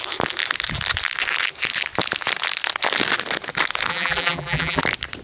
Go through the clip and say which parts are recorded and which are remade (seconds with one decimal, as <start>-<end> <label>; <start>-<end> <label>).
0.0-3.9 recorded; 3.9-4.8 remade; 4.8-5.2 recorded